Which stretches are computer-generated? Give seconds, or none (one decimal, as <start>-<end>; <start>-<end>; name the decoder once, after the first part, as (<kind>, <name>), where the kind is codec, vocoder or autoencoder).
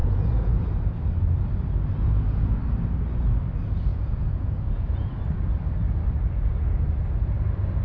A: 0.0-0.5 (vocoder, Vocos); 2.0-2.6; 3.9-5.1